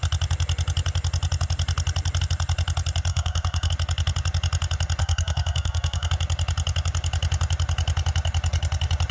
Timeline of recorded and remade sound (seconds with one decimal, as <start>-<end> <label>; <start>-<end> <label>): 0.0-3.1 recorded; 3.1-3.7 remade; 3.7-5.0 recorded; 5.0-6.1 remade; 6.1-9.1 recorded